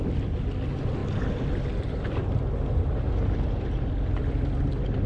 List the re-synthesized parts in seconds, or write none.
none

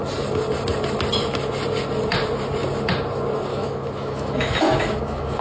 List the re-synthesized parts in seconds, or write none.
3.5-5.4 (autoencoder, DAC-VAE)

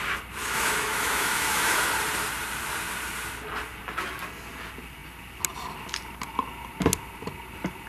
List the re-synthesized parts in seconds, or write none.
0.4-1.9 (autoencoder, DAC-VAE)

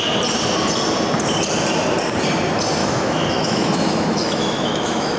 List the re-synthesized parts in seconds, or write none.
2.8-5.2 (autoencoder, DAC-VAE)

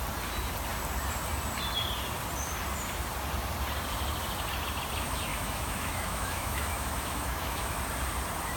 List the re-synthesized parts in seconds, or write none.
5.3-7.8 (autoencoder, DAC-VAE)

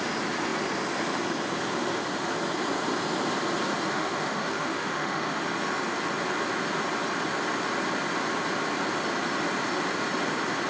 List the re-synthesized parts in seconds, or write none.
3.9-5.4 (autoencoder, DAC-VAE)